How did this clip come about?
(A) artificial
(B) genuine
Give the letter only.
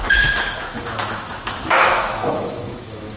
A